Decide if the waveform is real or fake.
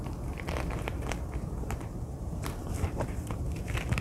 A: fake